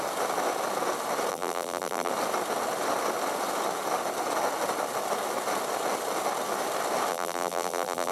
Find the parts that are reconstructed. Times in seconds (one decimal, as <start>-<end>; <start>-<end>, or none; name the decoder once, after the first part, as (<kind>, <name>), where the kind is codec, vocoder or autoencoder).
1.3-2.1 (vocoder, BigVGAN v2); 7.1-8.1